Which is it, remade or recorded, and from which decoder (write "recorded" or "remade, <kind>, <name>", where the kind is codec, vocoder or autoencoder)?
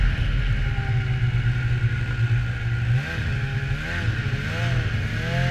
recorded